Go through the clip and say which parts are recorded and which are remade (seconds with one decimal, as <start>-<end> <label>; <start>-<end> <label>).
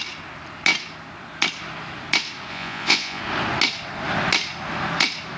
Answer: 0.0-2.5 recorded; 2.5-3.2 remade; 3.2-5.4 recorded